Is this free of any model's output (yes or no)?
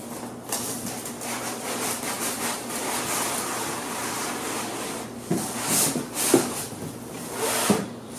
yes